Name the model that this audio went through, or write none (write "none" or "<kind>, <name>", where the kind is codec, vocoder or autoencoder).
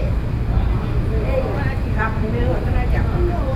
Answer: none